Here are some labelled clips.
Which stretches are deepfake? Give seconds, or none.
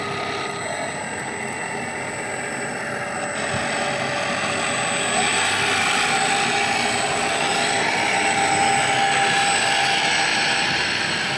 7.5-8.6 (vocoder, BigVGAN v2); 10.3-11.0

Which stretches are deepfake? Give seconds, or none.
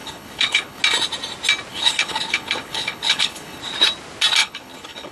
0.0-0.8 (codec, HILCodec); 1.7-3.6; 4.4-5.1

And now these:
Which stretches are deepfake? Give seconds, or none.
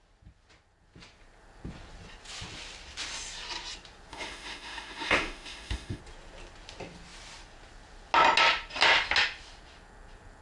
4.1-6.0 (autoencoder, DAC-VAE)